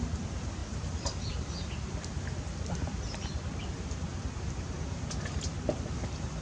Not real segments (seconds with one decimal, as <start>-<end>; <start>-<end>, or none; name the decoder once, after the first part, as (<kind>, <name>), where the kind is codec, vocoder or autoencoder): none